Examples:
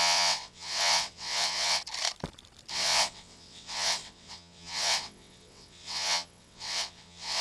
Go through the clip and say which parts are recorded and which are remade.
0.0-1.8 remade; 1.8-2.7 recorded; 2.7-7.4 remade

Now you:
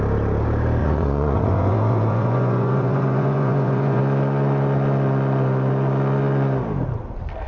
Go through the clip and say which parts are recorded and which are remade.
0.0-0.8 recorded; 0.8-4.0 remade; 4.0-7.5 recorded

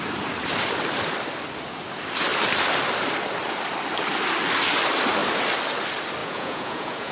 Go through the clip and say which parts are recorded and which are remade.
0.0-6.2 recorded; 6.2-7.1 remade

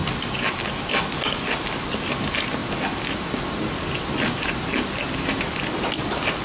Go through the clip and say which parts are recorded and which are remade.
0.0-6.4 recorded

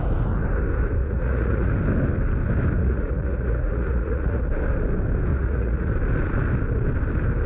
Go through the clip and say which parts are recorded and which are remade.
0.0-1.0 recorded; 1.0-1.7 remade; 1.7-2.8 recorded; 2.8-4.4 remade; 4.4-5.3 recorded; 5.3-5.9 remade; 5.9-7.5 recorded

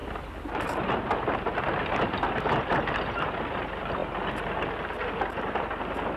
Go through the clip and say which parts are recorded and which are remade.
0.0-4.0 remade; 4.0-5.6 recorded; 5.6-6.2 remade

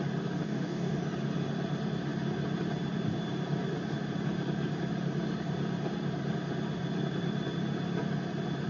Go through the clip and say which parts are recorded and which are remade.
0.0-0.4 recorded; 0.4-1.0 remade; 1.0-8.7 recorded